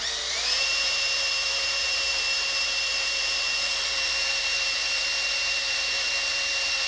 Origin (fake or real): fake